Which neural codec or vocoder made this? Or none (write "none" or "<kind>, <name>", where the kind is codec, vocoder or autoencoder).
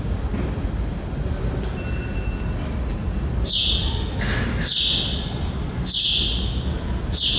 none